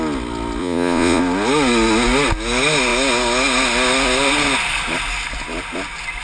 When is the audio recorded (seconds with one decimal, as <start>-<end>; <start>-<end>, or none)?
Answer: 0.0-0.6; 1.2-6.2